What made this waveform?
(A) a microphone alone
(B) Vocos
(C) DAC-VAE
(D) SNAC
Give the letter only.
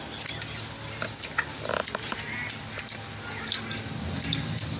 A